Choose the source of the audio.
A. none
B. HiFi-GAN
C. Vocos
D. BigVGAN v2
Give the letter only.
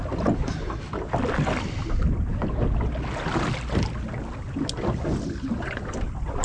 A